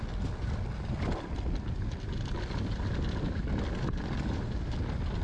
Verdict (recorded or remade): recorded